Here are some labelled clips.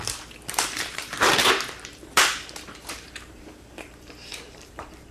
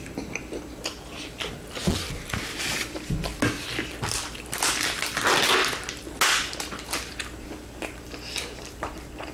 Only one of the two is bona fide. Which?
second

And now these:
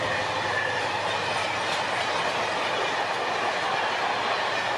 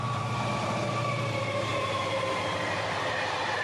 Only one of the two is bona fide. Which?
first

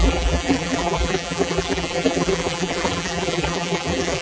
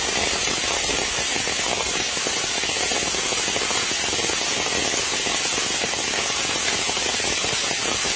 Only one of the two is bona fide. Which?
second